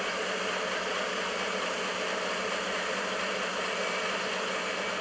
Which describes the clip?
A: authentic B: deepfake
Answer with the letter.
A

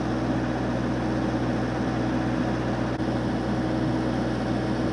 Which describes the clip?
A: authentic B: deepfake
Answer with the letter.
A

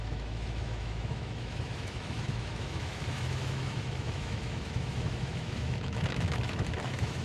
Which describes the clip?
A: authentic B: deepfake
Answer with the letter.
B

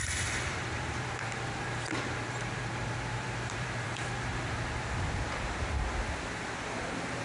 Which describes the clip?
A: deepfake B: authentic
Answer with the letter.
A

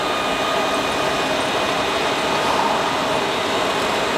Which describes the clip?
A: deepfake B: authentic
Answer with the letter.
B